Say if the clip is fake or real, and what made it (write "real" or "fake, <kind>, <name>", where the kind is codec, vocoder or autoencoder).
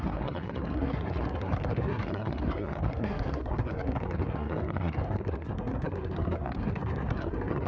fake, codec, SNAC